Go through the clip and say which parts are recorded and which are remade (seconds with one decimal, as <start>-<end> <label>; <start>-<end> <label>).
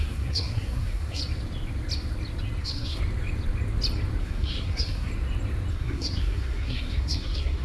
0.0-1.2 remade; 1.2-2.6 recorded; 2.6-3.0 remade; 3.0-4.2 recorded; 4.2-5.1 remade; 5.1-5.7 recorded; 5.7-7.6 remade